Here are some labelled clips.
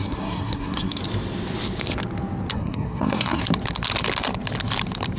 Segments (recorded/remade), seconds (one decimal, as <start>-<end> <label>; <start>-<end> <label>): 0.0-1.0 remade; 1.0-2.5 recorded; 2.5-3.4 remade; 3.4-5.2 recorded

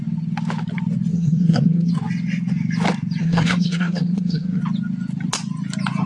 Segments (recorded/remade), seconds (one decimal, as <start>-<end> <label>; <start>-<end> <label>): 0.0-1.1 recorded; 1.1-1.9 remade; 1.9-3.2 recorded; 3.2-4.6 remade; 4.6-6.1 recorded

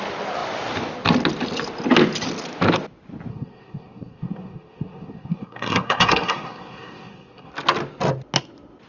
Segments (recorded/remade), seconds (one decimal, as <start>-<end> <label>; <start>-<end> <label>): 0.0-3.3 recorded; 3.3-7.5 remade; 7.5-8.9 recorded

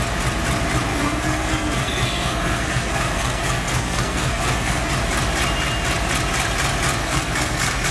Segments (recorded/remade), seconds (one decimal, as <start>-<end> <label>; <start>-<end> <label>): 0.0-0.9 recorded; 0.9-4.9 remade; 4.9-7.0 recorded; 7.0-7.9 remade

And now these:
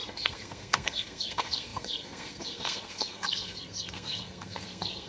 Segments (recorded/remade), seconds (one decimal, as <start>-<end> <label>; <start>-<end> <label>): 0.0-5.1 remade

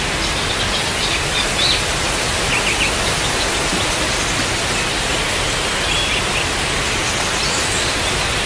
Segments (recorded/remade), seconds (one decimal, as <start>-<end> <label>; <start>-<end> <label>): 0.0-8.5 recorded